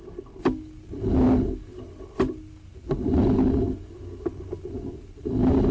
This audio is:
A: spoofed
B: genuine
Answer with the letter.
B